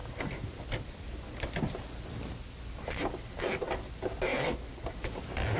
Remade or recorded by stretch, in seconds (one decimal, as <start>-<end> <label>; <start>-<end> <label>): 0.0-5.6 recorded